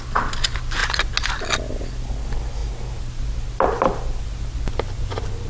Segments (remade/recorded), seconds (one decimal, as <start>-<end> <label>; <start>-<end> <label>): 0.0-5.5 recorded